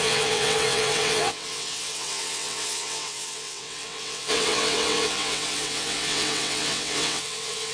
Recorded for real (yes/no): no